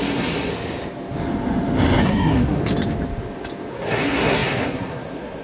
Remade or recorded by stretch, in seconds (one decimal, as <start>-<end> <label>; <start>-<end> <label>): 0.0-0.5 remade; 0.5-2.0 recorded; 2.0-2.6 remade; 2.6-3.7 recorded; 3.7-5.4 remade